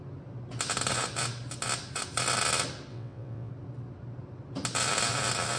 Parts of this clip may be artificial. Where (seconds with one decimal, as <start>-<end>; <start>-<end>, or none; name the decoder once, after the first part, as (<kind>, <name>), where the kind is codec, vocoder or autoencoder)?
2.9-3.5 (vocoder, WaveNeXt)